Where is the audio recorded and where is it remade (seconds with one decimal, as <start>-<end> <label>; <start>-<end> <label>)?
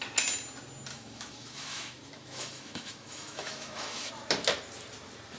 0.0-0.9 recorded; 0.9-4.1 remade; 4.1-5.4 recorded